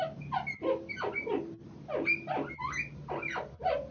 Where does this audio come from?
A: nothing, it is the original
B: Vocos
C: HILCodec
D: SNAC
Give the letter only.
A